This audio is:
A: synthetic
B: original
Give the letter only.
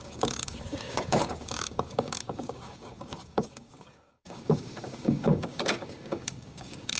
A